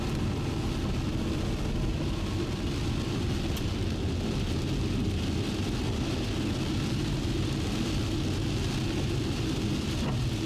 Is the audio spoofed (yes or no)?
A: no